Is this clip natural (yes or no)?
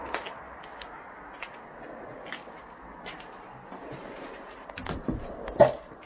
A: yes